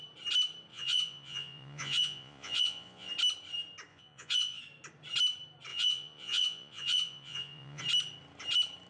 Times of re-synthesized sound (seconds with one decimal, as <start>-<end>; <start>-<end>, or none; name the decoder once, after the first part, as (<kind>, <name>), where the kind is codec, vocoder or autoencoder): 0.7-3.1 (vocoder, Vocos); 3.9-4.6; 5.7-7.8